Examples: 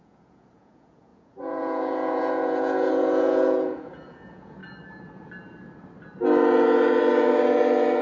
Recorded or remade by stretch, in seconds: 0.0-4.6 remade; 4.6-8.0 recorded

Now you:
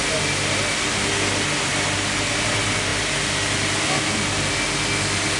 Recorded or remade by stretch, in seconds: 0.0-5.4 recorded

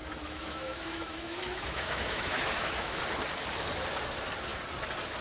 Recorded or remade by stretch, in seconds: 0.0-3.0 remade; 3.0-5.2 recorded

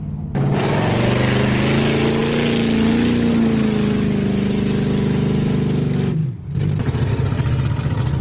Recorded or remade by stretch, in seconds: 0.0-8.2 recorded

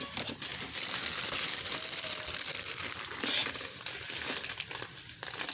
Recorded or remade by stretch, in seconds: 0.0-0.5 remade; 0.5-2.5 recorded; 2.5-3.4 remade; 3.4-4.8 recorded; 4.8-5.5 remade

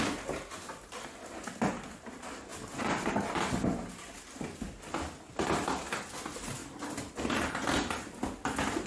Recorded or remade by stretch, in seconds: 0.0-8.9 recorded

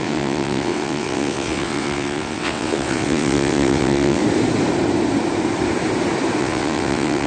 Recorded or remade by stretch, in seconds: 0.0-4.2 remade; 4.2-6.4 recorded; 6.4-7.3 remade

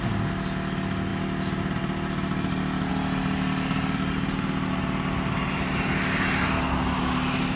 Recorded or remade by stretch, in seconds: 0.0-7.6 recorded